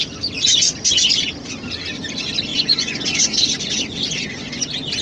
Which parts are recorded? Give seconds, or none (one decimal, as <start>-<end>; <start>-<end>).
0.0-2.5; 4.6-5.0